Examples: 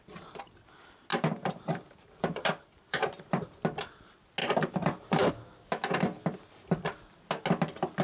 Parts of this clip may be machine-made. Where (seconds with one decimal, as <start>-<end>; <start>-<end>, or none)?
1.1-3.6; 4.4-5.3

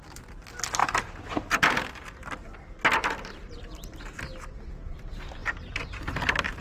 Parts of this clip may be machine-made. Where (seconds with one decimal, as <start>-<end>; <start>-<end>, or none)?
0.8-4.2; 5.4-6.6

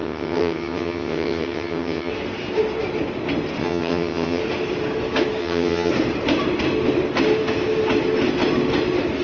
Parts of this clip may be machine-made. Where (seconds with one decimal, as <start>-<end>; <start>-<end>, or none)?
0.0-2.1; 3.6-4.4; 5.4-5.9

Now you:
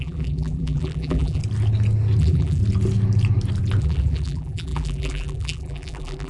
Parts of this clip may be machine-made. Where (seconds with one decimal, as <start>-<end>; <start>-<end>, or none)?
0.0-1.4; 2.2-2.6; 3.8-6.3